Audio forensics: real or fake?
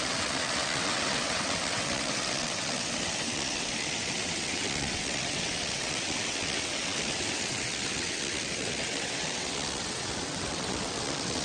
fake